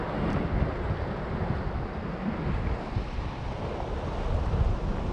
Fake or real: real